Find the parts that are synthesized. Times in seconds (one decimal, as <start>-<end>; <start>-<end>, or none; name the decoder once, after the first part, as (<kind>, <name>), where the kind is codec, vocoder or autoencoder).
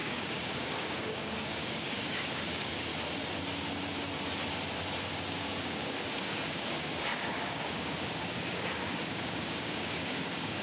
0.0-2.9 (codec, DAC); 5.1-10.6